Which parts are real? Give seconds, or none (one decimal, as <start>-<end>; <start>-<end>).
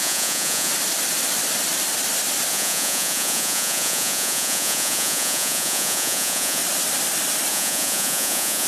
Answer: 0.7-2.5; 6.6-7.5